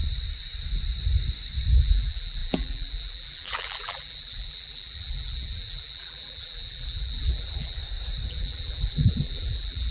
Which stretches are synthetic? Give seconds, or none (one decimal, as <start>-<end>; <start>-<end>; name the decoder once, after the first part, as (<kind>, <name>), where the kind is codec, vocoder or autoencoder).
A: 1.8-7.8 (vocoder, BigVGAN v2); 8.3-9.9

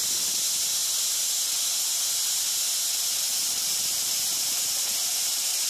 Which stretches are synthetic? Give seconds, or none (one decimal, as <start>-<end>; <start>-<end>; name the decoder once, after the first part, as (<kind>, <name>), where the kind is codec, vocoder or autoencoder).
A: none